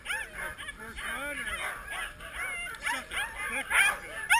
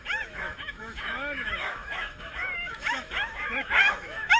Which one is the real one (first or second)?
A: first